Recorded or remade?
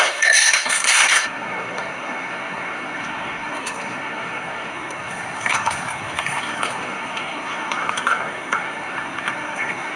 remade